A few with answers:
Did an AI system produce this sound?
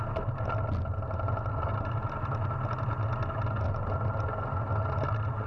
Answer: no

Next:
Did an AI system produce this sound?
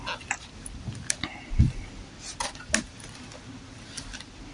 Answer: no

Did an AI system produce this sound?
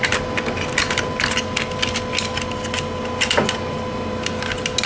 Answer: no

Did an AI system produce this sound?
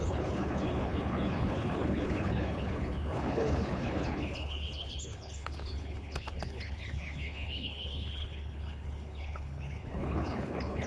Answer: yes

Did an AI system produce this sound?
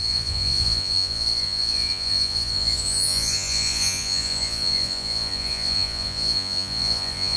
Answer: yes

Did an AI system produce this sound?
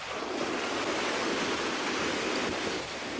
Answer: no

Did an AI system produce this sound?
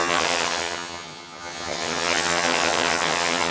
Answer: yes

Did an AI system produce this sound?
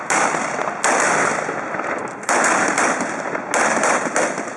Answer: no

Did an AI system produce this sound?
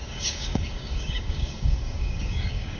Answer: yes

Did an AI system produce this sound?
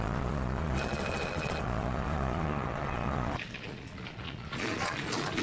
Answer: yes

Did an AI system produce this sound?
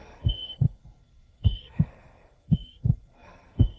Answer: yes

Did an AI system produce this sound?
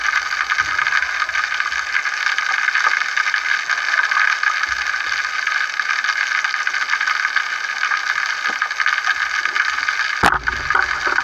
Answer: no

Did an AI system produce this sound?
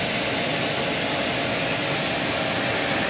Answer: no